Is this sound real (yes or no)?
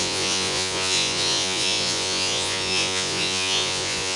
no